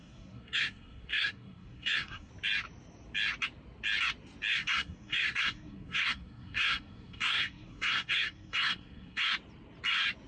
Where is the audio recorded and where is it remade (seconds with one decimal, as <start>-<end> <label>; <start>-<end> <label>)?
0.0-2.3 remade; 2.3-4.5 recorded; 4.5-9.2 remade; 9.2-10.3 recorded